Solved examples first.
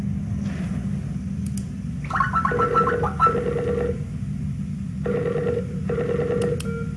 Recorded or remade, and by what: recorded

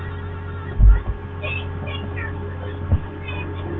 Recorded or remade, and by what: recorded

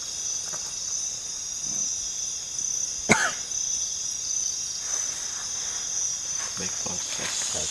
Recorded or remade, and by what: recorded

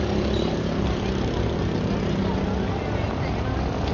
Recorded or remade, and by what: recorded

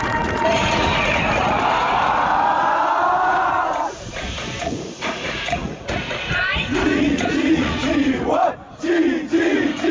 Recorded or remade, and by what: remade, vocoder, Vocos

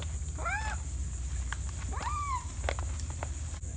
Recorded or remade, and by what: recorded